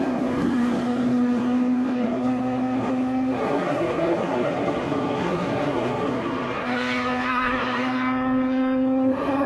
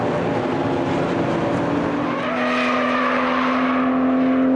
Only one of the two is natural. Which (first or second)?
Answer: second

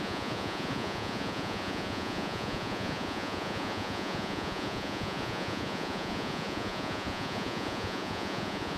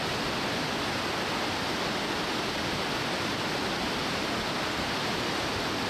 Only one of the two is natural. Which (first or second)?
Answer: second